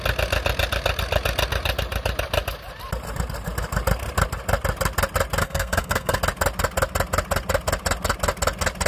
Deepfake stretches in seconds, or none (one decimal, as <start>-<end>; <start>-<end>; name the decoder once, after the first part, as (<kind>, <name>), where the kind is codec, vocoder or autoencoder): 5.4-6.2 (codec, SNAC)